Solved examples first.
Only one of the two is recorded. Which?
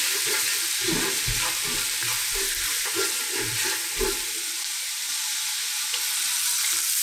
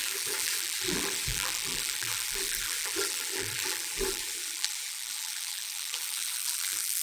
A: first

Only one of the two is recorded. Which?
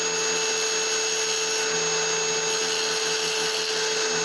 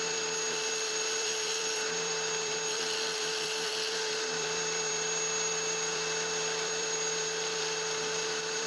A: first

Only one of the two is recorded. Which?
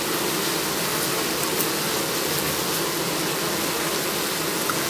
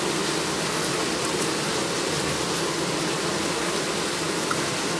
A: first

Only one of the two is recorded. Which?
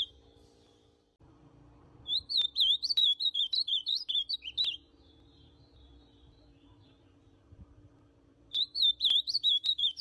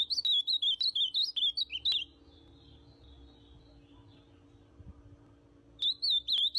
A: second